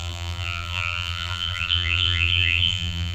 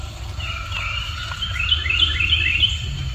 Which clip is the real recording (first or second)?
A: second